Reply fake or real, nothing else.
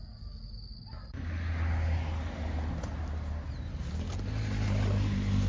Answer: real